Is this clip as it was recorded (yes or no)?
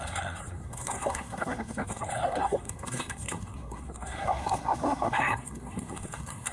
no